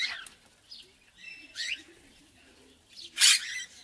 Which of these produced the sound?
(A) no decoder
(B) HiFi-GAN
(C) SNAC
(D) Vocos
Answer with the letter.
A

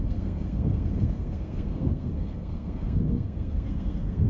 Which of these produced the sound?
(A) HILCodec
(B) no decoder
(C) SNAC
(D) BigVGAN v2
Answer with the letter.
C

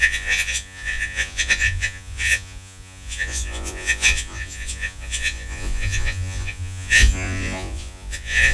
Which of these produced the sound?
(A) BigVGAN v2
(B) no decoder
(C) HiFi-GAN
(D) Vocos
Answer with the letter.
D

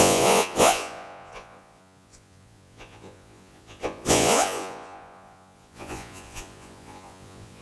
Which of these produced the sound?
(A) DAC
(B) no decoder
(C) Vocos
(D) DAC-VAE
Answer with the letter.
C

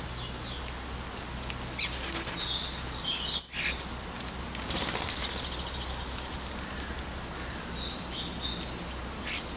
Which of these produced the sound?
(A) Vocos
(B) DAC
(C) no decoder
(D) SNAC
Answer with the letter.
C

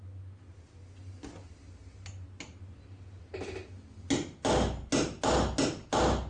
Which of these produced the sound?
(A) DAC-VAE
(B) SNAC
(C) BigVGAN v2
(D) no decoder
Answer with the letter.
D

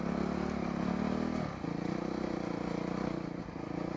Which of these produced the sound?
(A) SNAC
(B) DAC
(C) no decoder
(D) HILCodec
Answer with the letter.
C